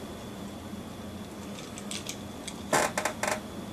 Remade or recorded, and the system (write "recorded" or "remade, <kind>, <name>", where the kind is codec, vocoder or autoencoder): recorded